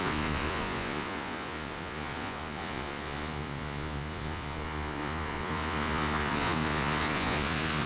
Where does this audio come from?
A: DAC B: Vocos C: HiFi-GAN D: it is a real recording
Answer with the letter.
B